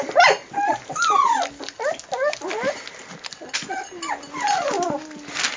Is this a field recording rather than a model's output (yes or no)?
yes